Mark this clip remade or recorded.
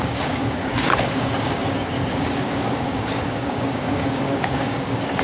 remade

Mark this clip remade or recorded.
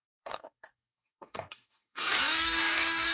remade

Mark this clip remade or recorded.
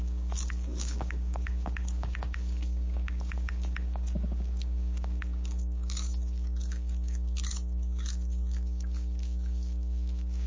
remade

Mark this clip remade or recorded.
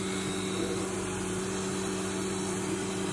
recorded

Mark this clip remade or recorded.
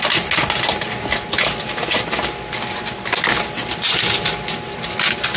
recorded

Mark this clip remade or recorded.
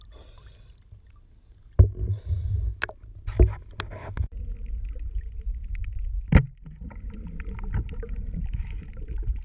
recorded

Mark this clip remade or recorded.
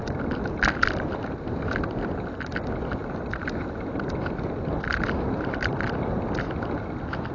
recorded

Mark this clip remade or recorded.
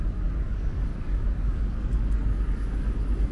remade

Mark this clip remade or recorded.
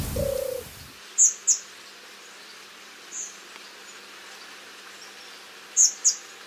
recorded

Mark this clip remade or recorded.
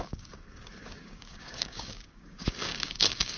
remade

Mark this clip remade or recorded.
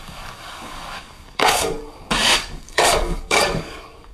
remade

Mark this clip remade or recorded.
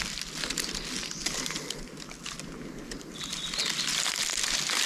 recorded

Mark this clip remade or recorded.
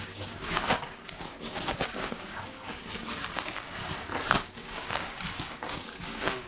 remade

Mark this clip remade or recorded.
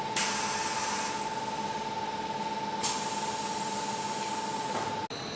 recorded